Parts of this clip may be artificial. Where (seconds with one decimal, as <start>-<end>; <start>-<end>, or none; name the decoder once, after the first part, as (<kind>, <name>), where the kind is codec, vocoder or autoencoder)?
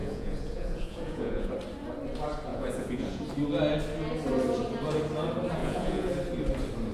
0.0-1.5 (vocoder, Vocos); 2.5-3.2; 5.6-6.1